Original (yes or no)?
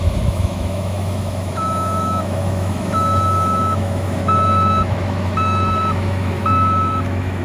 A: no